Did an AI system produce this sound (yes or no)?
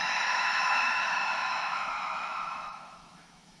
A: yes